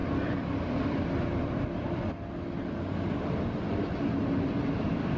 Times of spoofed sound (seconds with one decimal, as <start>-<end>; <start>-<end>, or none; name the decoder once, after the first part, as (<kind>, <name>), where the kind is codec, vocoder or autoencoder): none